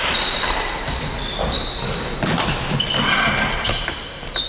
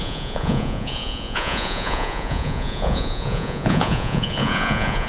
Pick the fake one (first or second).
second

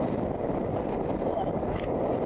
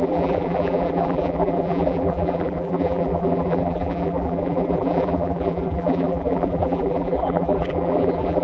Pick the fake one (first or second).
second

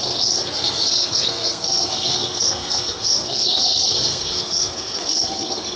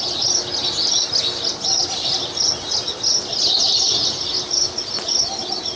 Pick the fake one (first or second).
first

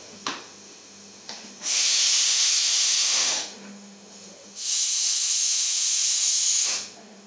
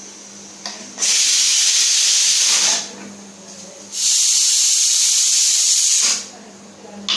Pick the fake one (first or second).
first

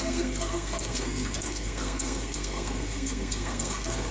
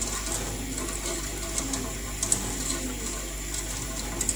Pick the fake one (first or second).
first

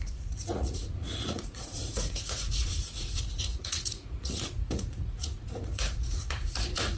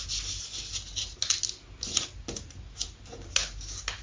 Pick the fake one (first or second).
first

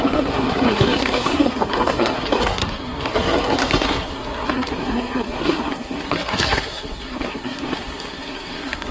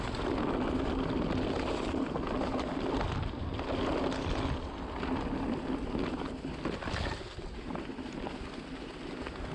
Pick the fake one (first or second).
first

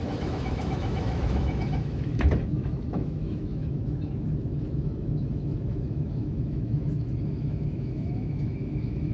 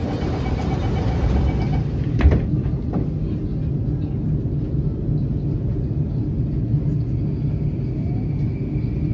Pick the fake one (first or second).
first